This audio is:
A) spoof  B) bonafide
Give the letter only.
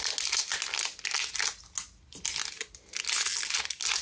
B